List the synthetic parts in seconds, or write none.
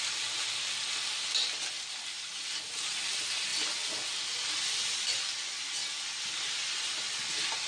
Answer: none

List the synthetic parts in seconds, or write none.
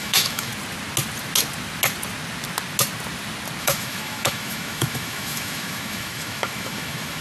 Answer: 0.0-0.5 (autoencoder, DAC-VAE); 3.6-7.2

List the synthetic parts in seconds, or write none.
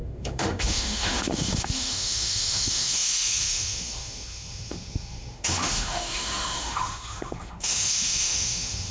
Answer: 0.0-8.9 (autoencoder, DAC-VAE)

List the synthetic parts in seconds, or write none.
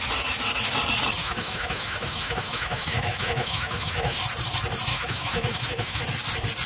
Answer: 1.2-4.2 (autoencoder, DAC-VAE); 4.9-6.0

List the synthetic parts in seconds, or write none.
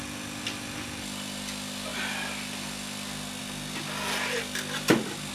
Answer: none